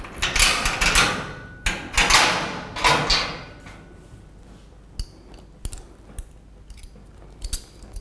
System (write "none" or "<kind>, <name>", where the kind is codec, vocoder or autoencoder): none